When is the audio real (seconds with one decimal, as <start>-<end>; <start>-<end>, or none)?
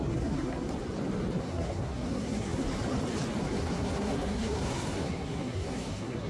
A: 0.7-1.4; 2.6-3.4